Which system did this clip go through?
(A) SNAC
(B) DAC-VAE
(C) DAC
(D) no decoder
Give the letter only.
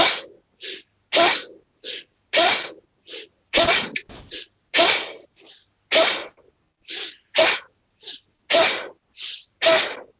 D